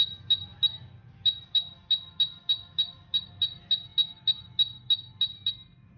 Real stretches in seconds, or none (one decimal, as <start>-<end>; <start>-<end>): 0.0-6.0